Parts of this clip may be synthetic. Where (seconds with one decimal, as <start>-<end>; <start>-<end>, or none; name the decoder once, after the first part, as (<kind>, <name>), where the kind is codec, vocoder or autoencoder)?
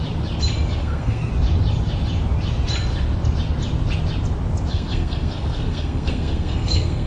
0.8-1.3 (codec, SNAC); 4.7-7.1